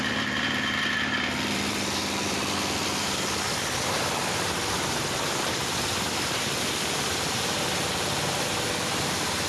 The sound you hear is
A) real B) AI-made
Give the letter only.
B